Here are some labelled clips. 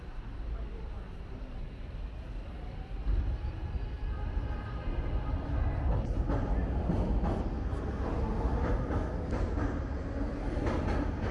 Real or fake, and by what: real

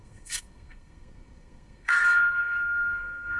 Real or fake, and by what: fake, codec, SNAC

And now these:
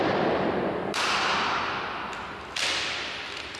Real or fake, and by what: real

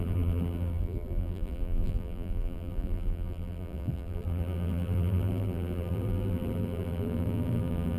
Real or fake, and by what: fake, vocoder, BigVGAN v2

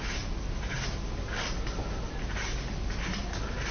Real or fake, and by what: real